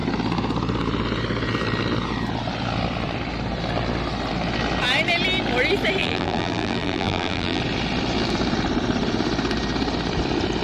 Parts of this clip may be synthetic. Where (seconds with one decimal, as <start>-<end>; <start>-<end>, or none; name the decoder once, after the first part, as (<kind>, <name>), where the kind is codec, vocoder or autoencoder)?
6.0-7.6 (vocoder, BigVGAN v2)